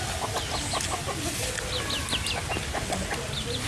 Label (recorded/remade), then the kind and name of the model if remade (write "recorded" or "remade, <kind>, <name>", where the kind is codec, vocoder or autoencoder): recorded